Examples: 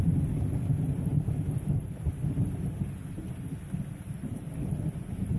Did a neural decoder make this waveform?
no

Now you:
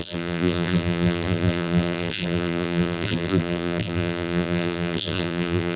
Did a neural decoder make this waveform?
yes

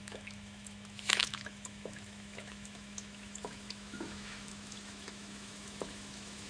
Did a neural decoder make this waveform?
yes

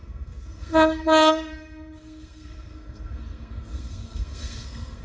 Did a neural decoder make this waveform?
yes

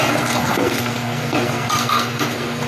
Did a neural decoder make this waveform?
yes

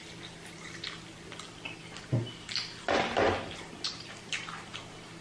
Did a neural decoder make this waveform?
no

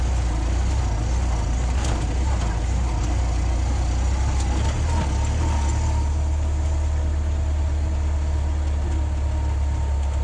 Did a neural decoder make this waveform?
no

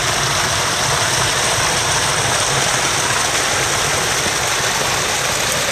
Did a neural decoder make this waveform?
no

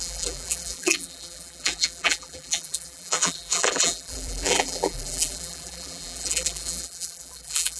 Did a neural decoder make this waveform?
yes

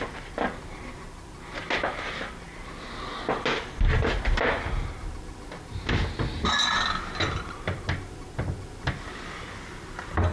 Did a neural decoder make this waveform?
no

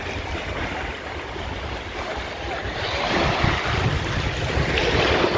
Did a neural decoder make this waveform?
no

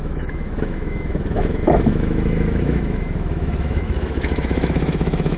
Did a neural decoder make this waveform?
yes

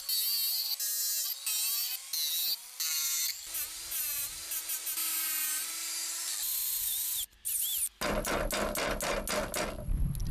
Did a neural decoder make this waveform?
no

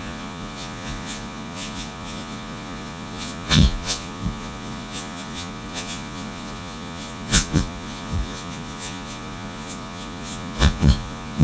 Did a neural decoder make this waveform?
yes